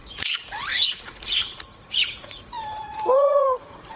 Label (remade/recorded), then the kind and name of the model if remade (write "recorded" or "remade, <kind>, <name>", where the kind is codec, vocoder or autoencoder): remade, vocoder, Vocos